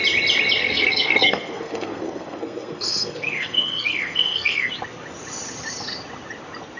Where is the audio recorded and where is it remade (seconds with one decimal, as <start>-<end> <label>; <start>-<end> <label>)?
0.0-0.6 recorded; 0.6-4.7 remade; 4.7-6.8 recorded